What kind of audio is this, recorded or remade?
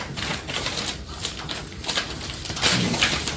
remade